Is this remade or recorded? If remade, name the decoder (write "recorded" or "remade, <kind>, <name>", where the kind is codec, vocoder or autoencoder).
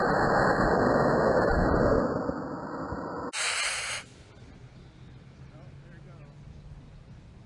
recorded